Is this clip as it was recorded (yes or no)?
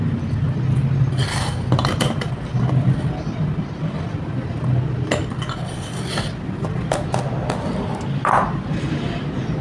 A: yes